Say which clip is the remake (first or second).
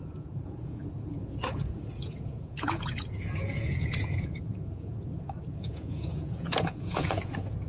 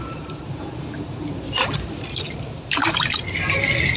first